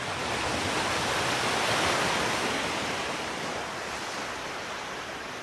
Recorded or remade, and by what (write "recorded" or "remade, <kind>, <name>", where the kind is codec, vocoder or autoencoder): recorded